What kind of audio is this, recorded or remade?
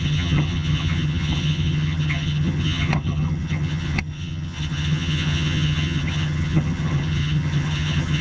remade